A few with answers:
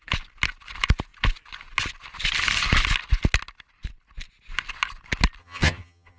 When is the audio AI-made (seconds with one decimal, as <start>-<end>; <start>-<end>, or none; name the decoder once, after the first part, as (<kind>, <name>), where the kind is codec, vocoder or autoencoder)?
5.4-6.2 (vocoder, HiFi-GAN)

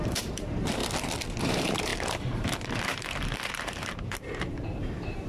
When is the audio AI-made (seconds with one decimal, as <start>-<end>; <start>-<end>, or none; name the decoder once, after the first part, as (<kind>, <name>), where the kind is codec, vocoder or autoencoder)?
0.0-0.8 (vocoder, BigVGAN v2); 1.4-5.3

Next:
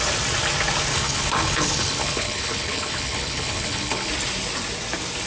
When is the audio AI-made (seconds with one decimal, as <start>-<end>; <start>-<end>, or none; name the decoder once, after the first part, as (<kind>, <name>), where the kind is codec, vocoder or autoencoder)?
0.9-4.1 (codec, HILCodec)